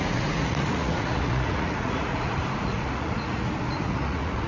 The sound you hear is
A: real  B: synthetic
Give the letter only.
B